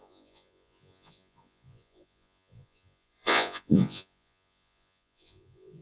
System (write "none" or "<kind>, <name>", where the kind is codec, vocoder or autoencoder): vocoder, Vocos